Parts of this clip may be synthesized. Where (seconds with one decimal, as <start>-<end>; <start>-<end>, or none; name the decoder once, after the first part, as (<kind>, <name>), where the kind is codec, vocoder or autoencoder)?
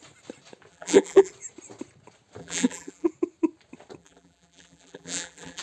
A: 0.7-1.3 (vocoder, BigVGAN v2); 2.4-3.1; 4.0-5.6